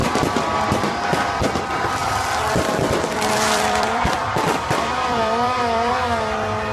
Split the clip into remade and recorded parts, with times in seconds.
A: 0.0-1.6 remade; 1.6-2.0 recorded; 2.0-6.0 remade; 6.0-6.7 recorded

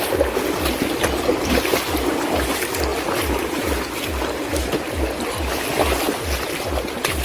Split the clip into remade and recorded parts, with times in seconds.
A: 0.0-7.2 recorded

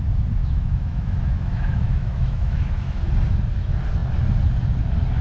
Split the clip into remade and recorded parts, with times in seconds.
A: 0.0-0.4 recorded; 0.4-3.1 remade; 3.1-5.2 recorded

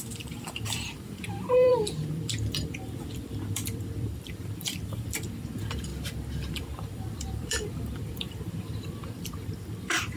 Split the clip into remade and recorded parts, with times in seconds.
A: 0.0-5.9 remade; 5.9-6.5 recorded; 6.5-10.2 remade

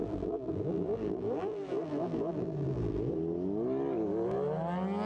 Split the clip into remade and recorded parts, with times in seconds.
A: 0.0-3.1 remade; 3.1-5.1 recorded